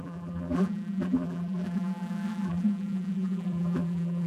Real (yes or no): no